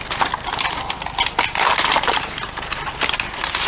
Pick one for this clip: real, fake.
real